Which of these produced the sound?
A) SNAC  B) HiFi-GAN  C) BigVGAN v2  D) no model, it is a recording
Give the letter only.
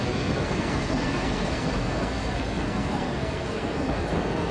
A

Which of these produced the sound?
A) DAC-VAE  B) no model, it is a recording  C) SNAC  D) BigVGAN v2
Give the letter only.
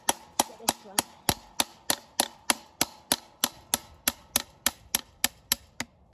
B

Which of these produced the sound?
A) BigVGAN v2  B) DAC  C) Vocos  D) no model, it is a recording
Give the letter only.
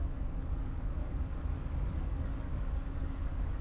B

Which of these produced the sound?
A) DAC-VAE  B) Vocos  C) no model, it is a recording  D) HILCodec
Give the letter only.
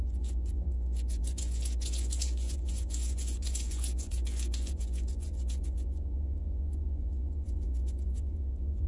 B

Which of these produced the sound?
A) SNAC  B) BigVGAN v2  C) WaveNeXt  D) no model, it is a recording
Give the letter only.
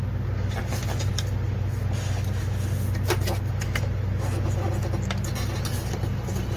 D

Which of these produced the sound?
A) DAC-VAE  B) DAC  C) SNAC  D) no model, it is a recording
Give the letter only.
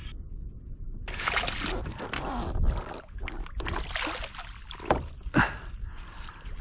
D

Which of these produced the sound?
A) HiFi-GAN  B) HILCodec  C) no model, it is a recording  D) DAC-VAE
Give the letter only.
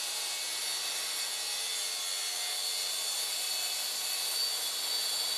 C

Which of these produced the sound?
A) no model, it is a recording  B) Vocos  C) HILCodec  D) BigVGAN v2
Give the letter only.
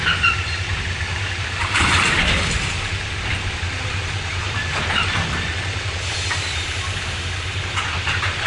D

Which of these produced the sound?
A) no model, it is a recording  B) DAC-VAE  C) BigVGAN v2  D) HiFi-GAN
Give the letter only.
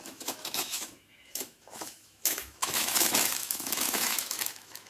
B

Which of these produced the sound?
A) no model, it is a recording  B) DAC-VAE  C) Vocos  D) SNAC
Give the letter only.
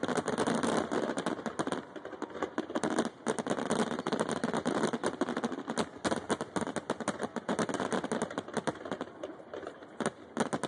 A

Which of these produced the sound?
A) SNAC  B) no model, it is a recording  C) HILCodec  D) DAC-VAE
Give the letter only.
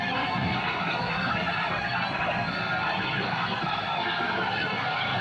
A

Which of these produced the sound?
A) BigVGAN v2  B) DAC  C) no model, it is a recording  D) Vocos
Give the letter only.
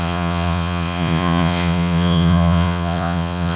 D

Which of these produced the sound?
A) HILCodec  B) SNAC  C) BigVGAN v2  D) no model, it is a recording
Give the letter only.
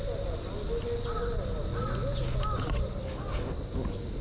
D